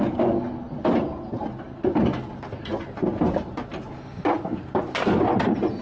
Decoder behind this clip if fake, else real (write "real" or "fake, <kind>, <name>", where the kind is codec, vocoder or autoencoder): real